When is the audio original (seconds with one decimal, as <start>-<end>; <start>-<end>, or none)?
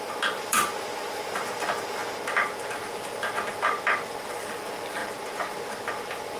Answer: 2.0-4.2; 5.0-6.4